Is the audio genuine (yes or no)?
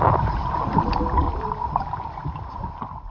yes